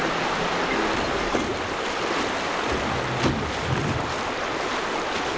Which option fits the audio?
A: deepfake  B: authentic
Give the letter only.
B